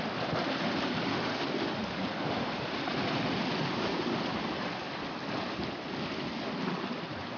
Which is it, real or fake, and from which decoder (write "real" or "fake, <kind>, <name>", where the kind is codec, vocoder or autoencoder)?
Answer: real